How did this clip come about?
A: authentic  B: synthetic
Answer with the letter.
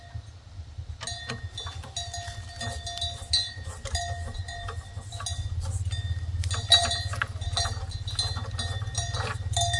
A